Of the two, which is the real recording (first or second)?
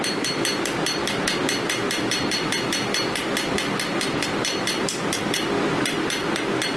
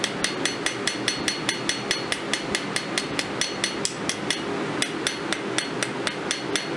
second